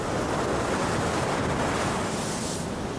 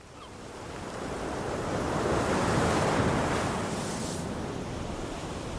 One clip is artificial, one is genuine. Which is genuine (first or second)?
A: first